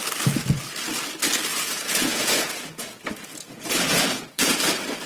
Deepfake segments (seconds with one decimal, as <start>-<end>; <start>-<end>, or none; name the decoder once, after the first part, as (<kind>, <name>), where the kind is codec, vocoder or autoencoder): 1.5-4.6 (vocoder, Vocos)